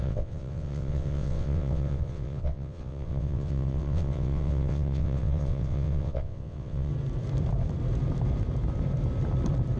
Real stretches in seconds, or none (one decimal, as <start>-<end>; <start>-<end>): 6.9-9.8